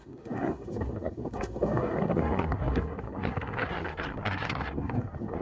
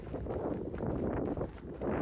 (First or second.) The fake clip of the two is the first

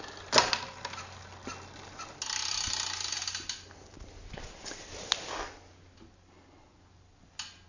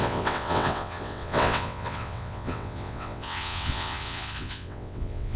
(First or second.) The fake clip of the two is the second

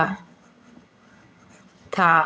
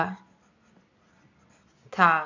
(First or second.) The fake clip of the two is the first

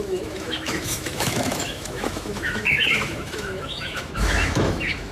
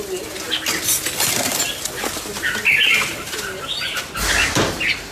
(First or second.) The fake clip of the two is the first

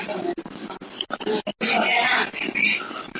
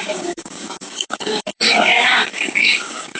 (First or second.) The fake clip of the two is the second